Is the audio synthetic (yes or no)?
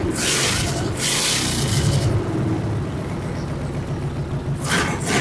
no